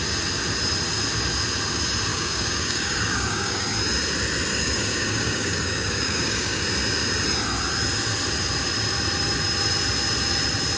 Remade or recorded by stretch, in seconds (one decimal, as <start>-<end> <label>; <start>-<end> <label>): 0.0-2.1 recorded; 2.1-3.6 remade; 3.6-4.5 recorded; 4.5-6.6 remade; 6.6-10.8 recorded